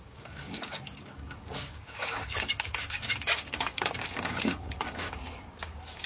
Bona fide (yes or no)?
no